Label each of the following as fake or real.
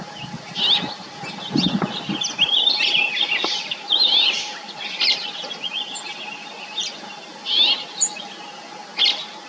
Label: real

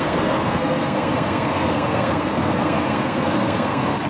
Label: fake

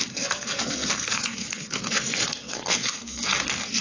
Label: fake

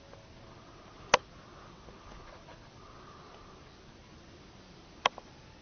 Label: real